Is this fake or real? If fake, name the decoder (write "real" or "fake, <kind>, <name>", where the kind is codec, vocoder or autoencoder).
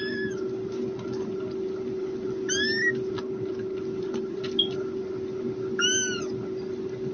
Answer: real